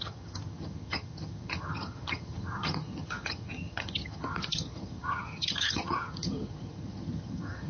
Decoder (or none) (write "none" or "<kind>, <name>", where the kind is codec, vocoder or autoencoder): vocoder, HiFi-GAN